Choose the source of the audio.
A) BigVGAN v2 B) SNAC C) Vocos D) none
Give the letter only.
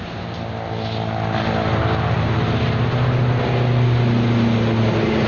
D